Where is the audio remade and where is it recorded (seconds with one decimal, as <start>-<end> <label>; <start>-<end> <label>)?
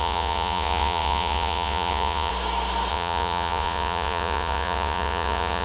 0.0-2.3 remade; 2.3-2.9 recorded; 2.9-5.6 remade